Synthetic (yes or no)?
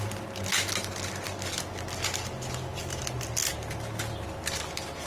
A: no